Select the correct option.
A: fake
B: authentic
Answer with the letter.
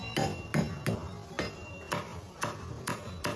B